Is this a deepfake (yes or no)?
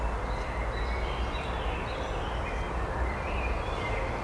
no